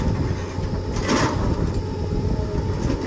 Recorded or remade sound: recorded